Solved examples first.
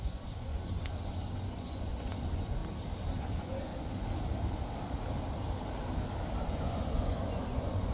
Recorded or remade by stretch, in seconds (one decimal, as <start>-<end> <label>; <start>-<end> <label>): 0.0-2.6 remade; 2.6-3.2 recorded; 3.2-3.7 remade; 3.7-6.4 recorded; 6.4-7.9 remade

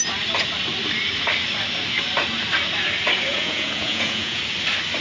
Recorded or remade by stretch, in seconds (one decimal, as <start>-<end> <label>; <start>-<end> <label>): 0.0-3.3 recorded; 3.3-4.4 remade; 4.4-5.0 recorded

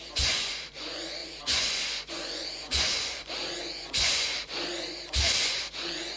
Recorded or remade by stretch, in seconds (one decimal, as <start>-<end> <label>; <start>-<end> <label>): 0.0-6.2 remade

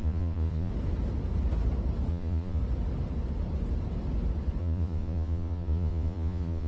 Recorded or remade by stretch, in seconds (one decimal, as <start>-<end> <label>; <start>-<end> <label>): 0.0-0.7 remade; 0.7-2.1 recorded; 2.1-2.6 remade; 2.6-4.6 recorded; 4.6-6.7 remade

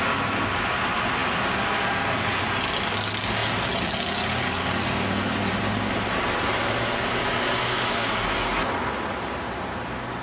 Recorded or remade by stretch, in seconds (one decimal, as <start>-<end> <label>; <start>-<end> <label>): 0.0-10.2 recorded

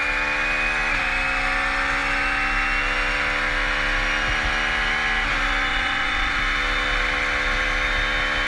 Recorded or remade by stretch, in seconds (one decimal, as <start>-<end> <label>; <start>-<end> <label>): 0.0-5.7 recorded; 5.7-6.4 remade; 6.4-8.5 recorded